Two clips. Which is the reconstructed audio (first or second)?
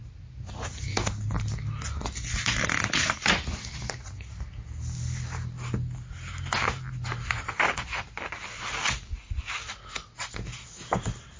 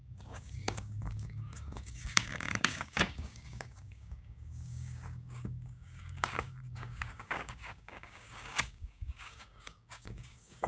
second